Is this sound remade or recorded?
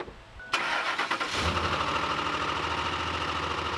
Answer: recorded